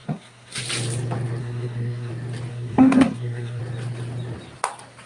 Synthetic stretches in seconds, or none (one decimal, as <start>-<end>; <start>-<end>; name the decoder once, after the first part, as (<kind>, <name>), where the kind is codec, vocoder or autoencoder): 0.0-0.6 (codec, SNAC); 1.4-2.1; 2.5-3.6